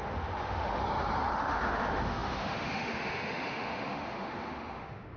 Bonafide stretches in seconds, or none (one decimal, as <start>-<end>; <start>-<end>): 0.8-1.3